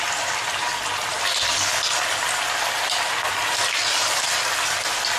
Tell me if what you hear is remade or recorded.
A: recorded